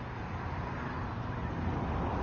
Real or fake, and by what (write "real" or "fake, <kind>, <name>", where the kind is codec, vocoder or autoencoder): real